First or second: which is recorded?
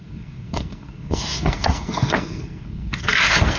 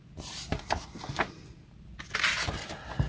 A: second